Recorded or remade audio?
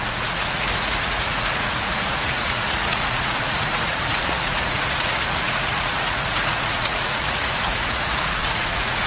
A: remade